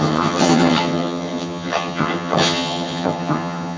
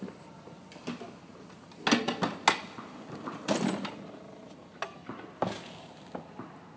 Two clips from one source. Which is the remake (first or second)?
first